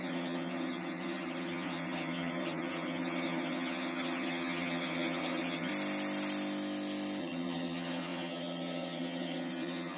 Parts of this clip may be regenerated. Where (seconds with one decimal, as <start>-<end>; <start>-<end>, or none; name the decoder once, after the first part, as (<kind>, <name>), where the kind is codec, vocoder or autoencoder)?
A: 0.0-5.7 (vocoder, HiFi-GAN); 7.2-10.0